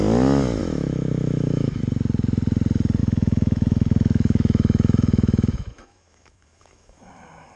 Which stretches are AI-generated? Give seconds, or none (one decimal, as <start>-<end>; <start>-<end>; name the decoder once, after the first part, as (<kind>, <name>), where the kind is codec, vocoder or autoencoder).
0.6-1.8 (autoencoder, DAC-VAE); 3.0-7.1